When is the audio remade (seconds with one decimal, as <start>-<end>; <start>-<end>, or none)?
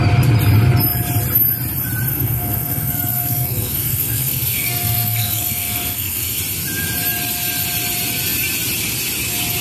2.1-6.4